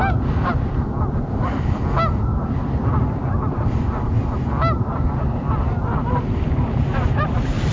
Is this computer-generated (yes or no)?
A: no